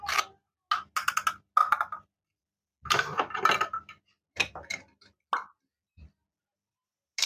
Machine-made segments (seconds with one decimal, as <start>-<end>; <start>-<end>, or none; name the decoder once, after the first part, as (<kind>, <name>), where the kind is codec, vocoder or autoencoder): none